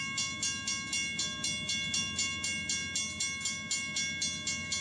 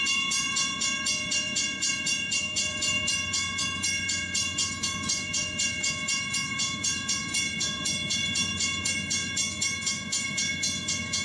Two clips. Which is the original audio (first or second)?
first